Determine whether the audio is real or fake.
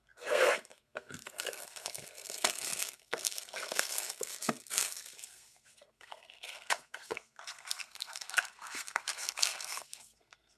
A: fake